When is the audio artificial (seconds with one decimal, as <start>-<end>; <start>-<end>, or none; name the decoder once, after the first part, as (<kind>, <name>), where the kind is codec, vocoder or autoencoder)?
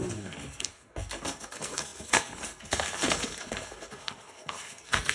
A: 0.0-5.1 (codec, SNAC)